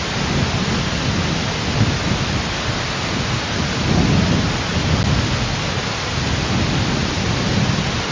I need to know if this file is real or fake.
real